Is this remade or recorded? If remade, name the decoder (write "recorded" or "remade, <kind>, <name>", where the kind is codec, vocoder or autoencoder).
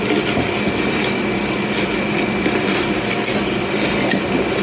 recorded